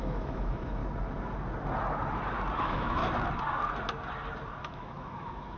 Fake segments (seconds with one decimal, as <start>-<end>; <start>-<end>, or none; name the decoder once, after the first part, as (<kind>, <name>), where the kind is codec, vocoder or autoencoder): 0.0-0.8 (autoencoder, DAC-VAE); 2.6-3.0; 4.6-5.6